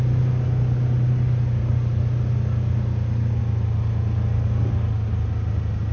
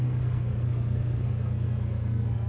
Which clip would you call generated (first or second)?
second